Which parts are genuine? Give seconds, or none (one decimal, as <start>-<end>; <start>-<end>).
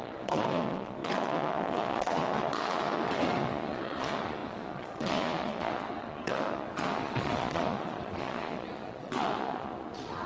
none